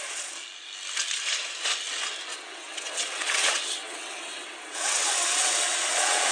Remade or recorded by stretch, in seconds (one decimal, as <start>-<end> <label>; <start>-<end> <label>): 0.0-2.3 recorded; 2.3-6.3 remade